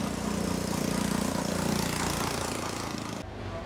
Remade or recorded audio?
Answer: recorded